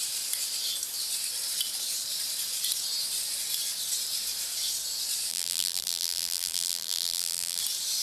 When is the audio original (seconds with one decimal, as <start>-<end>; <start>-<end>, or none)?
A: 0.0-5.3; 7.6-8.0